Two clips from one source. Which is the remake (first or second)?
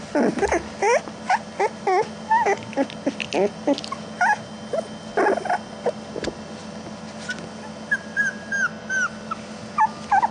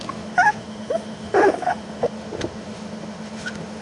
second